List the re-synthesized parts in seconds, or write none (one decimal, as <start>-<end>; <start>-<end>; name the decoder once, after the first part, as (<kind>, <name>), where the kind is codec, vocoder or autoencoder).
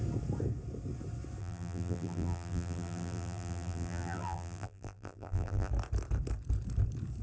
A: 1.4-5.7 (vocoder, BigVGAN v2)